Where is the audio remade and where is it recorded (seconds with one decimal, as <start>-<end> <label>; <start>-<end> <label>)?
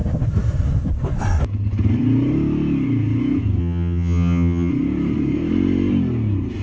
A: 0.0-3.6 recorded; 3.6-4.7 remade; 4.7-6.6 recorded